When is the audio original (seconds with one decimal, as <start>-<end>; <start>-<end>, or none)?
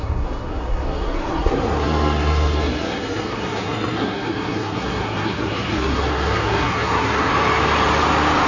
7.3-8.5